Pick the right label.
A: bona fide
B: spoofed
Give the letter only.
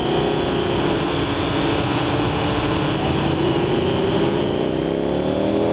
A